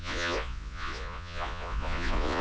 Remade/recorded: remade